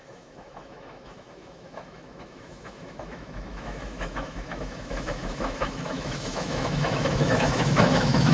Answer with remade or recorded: remade